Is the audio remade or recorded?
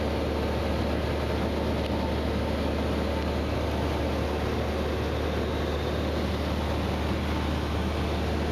recorded